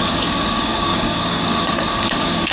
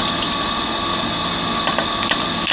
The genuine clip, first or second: second